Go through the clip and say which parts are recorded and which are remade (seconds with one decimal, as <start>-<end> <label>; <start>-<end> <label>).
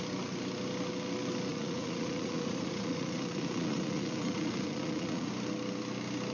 0.0-1.5 recorded; 1.5-5.3 remade; 5.3-6.3 recorded